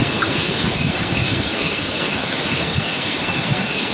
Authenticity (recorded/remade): remade